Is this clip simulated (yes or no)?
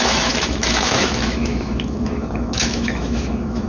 yes